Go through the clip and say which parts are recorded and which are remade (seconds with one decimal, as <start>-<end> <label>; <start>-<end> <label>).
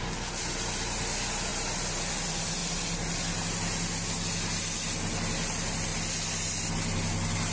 0.0-7.5 recorded